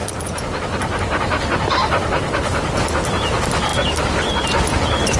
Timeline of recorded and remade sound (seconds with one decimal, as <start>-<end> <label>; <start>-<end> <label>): 0.0-5.2 recorded